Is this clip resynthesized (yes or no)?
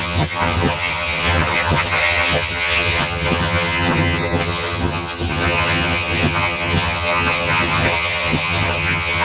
yes